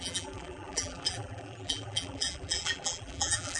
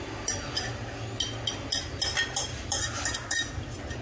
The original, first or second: second